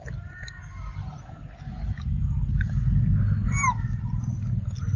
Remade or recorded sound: recorded